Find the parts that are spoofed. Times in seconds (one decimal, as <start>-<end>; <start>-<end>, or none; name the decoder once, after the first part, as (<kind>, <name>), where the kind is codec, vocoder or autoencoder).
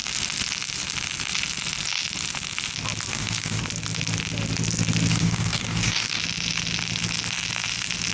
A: 3.1-3.6 (codec, DAC); 5.1-6.2